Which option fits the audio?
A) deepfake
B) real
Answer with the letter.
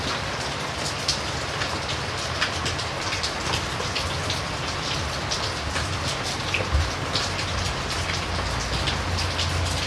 B